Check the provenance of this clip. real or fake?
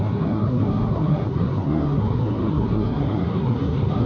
fake